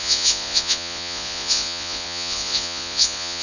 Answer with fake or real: fake